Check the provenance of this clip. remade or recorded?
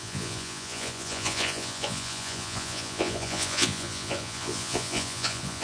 remade